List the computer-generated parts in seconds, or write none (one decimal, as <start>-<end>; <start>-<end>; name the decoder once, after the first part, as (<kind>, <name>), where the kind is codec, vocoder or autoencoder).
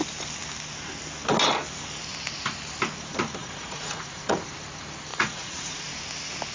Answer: 3.4-4.4 (vocoder, Vocos); 5.1-5.9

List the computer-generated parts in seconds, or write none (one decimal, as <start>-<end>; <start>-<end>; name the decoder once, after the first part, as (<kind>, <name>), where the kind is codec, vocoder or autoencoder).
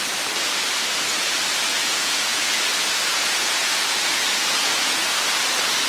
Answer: 1.7-5.2 (vocoder, Vocos)